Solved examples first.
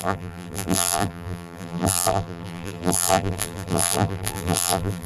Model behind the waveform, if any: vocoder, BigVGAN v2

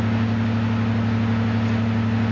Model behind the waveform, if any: none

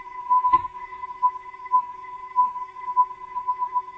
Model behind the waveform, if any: codec, SNAC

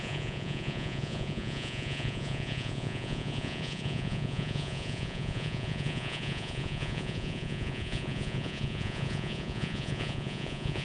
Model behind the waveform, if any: vocoder, Vocos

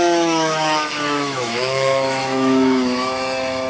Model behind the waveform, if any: autoencoder, DAC-VAE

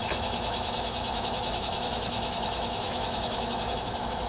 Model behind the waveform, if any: autoencoder, DAC-VAE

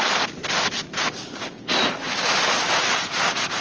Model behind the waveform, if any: none